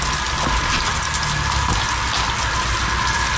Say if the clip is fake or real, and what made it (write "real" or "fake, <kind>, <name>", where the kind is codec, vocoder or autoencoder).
real